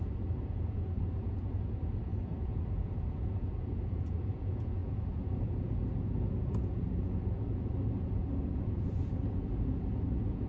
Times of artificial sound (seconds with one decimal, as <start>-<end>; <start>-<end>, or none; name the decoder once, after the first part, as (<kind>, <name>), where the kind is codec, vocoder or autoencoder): 0.0-10.5 (vocoder, Vocos)